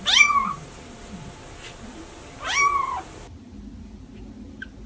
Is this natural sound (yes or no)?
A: yes